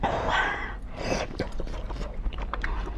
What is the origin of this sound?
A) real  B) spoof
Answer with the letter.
B